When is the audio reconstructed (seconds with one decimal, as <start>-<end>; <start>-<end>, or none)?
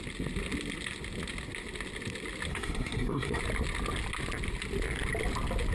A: 2.5-3.4